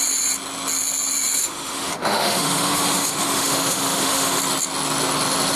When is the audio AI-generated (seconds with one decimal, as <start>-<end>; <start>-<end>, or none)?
1.4-4.4